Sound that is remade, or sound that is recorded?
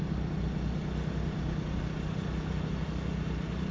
recorded